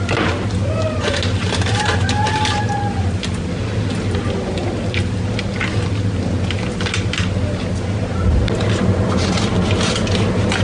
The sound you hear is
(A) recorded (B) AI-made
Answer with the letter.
A